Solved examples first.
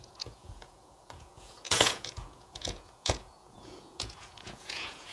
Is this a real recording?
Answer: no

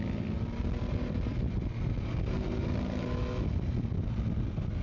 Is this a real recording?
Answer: yes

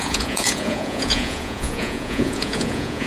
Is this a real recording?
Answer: no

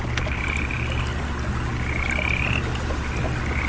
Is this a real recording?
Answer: yes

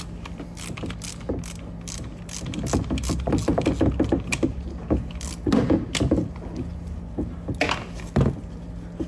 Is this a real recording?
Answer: yes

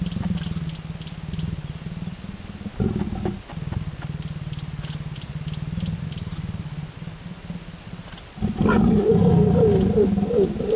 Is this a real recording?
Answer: yes